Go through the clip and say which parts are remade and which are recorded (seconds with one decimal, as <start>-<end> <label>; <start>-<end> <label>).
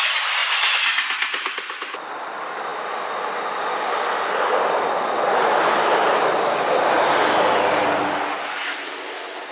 0.0-5.3 recorded; 5.3-6.2 remade; 6.2-9.5 recorded